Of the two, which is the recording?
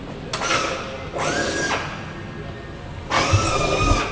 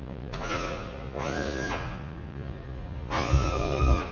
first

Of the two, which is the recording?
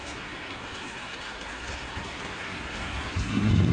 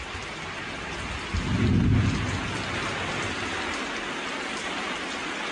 second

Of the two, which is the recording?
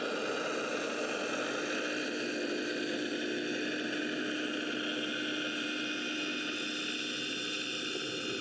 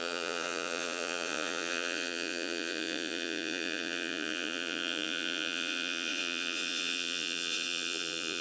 first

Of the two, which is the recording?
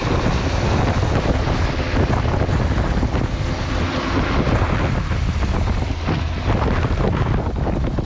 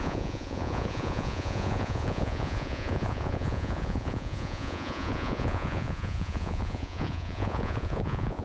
first